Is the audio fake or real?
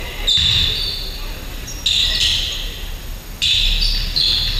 real